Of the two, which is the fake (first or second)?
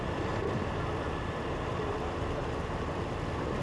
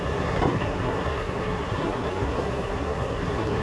second